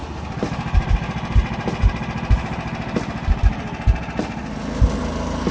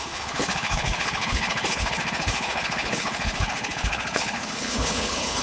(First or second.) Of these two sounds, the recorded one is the first